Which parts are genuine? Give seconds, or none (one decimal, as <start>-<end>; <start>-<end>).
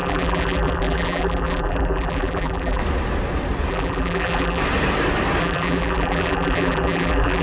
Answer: 2.8-3.7; 4.6-5.4